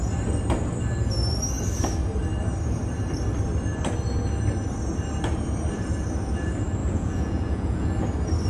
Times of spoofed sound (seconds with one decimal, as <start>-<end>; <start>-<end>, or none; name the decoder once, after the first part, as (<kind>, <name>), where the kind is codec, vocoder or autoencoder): 6.8-8.0 (vocoder, Vocos)